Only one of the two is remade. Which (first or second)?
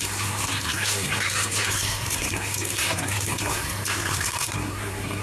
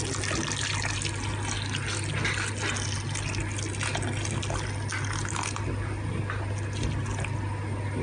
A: first